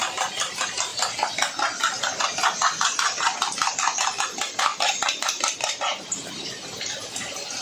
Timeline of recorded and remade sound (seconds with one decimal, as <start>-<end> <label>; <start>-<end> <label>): 0.0-0.9 remade; 0.9-2.2 recorded; 2.2-7.6 remade